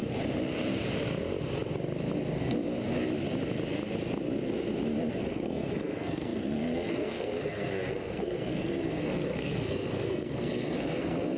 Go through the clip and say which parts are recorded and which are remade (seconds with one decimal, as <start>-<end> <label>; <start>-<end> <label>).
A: 0.0-5.1 recorded; 5.1-11.4 remade